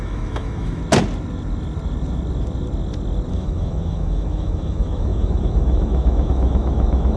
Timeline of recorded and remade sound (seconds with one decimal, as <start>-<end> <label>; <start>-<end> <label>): 0.0-0.8 remade; 0.8-3.3 recorded; 3.3-7.2 remade